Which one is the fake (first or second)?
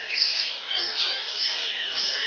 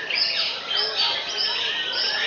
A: first